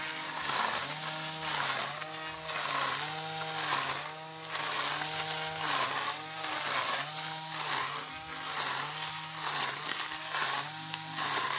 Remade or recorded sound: recorded